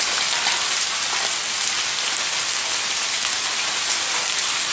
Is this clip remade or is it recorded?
recorded